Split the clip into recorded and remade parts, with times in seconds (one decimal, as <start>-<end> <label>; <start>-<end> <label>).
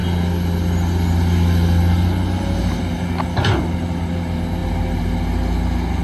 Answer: 0.0-6.0 recorded